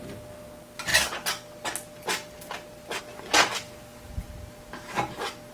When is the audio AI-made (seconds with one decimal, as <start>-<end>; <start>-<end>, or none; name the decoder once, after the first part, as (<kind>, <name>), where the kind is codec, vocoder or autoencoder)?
none